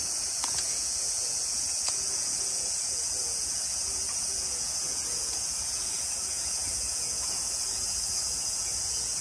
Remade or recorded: remade